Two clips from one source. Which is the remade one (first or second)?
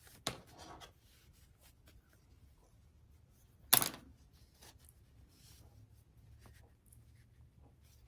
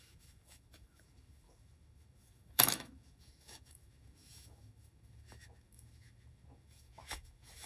second